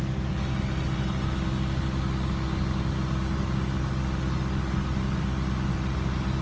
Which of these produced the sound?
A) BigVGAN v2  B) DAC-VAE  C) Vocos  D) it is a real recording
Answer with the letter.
D